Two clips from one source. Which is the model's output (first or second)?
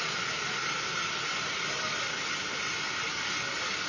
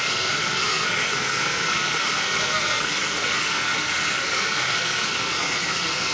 second